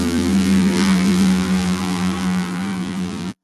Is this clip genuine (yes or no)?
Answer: no